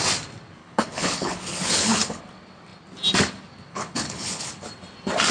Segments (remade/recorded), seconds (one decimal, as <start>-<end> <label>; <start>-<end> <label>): 0.0-0.6 recorded; 0.6-2.2 remade; 2.2-3.7 recorded; 3.7-4.5 remade; 4.5-5.3 recorded